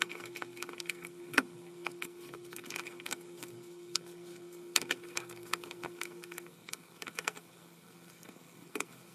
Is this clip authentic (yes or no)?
no